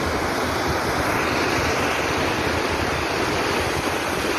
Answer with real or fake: real